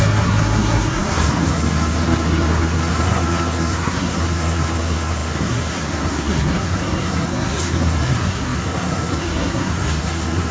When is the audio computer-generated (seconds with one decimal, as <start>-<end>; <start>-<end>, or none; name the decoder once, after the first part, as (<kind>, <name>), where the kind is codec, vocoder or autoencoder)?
0.0-10.5 (codec, SNAC)